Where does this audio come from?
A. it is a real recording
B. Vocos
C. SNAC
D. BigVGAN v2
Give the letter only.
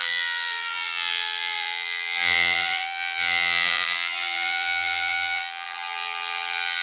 D